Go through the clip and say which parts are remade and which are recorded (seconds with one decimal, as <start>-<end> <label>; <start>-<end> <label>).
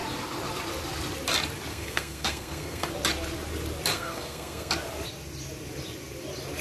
0.0-1.7 recorded; 1.7-2.9 remade; 2.9-3.9 recorded; 3.9-4.7 remade; 4.7-6.6 recorded